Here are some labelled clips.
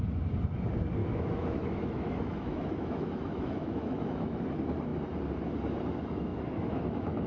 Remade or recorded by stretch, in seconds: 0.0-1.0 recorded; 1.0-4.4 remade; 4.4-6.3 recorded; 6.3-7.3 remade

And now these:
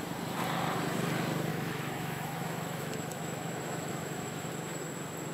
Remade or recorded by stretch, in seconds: 0.0-1.5 recorded; 1.5-4.5 remade; 4.5-5.3 recorded

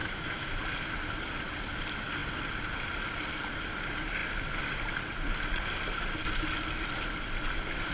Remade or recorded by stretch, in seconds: 0.0-0.6 remade; 0.6-7.9 recorded

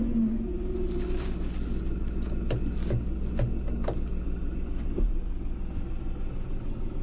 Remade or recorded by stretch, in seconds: 0.0-7.0 recorded

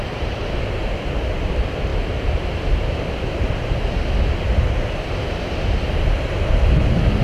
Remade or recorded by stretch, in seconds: 0.0-7.2 recorded